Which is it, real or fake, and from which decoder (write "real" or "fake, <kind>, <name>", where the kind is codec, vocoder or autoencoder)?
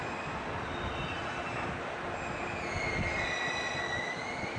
real